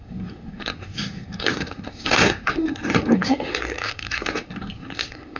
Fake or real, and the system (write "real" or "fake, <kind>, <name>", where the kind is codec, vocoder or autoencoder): fake, codec, SNAC